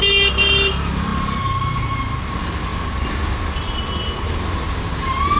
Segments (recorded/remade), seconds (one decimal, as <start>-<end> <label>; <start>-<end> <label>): 0.0-5.4 recorded